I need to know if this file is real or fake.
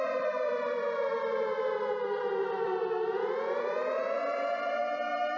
fake